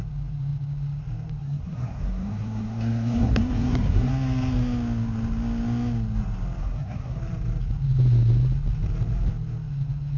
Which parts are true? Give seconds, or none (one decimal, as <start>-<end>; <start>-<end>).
0.0-1.4; 4.1-6.6; 7.2-10.2

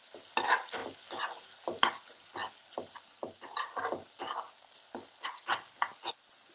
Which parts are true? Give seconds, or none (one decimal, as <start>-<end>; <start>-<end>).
0.0-6.5